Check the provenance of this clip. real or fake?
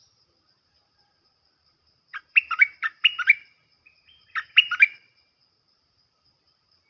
fake